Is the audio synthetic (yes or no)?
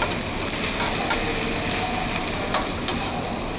no